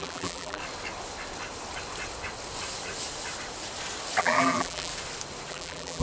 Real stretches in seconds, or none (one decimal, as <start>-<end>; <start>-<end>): 0.6-4.2; 4.9-5.5